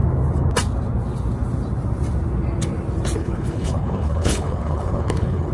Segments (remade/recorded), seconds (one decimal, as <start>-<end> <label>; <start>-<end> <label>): 0.0-3.2 recorded; 3.2-5.5 remade